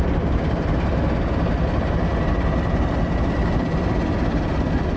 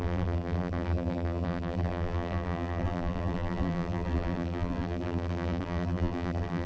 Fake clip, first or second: second